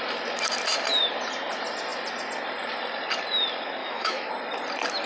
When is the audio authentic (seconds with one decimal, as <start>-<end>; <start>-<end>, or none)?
0.0-3.8; 4.3-5.1